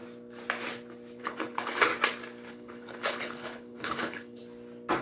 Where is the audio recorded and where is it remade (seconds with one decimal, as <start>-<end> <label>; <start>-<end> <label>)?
0.0-1.2 recorded; 1.2-1.9 remade; 1.9-2.5 recorded; 2.5-4.4 remade; 4.4-5.0 recorded